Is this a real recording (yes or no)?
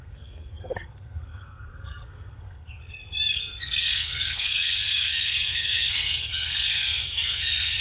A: no